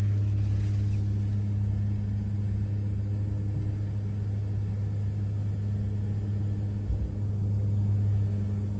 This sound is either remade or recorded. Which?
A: recorded